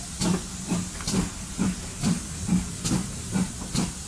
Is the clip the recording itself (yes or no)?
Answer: yes